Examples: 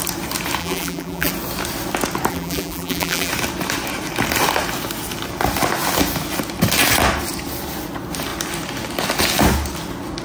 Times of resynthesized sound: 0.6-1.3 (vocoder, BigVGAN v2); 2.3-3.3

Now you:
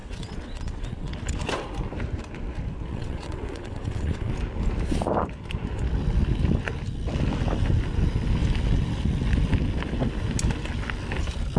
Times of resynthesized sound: 0.0-1.1 (vocoder, WaveNeXt); 2.9-4.3

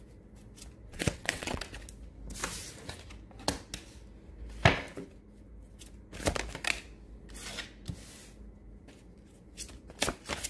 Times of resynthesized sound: 0.9-1.6 (vocoder, WaveNeXt)

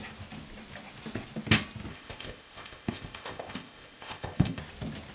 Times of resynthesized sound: 1.9-4.6 (codec, ZipCodec)

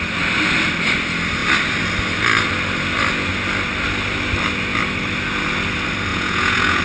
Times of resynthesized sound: 6.1-6.8 (vocoder, Vocos)

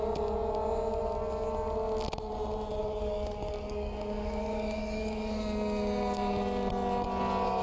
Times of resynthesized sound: 2.8-5.4 (codec, DAC)

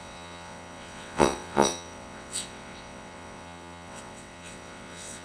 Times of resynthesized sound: 0.0-5.2 (vocoder, WaveNeXt)

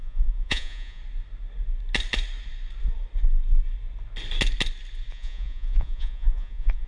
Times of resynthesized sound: 0.0-1.0 (vocoder, Vocos); 5.1-6.9